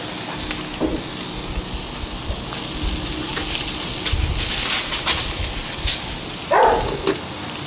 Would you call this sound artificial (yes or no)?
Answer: no